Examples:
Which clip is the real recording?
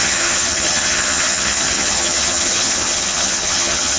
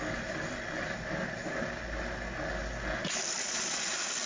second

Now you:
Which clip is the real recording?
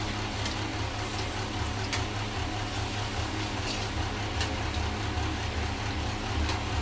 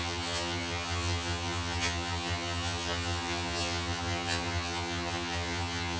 first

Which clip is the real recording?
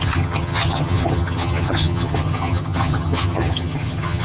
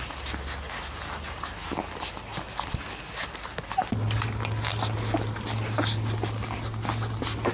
second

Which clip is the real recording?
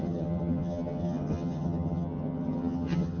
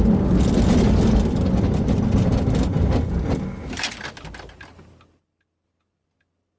second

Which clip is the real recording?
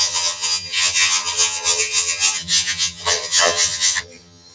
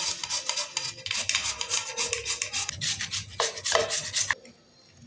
second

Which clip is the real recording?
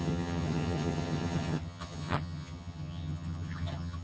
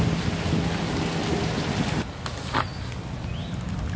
second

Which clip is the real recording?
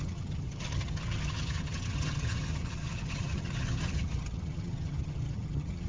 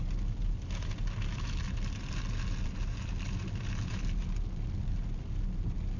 second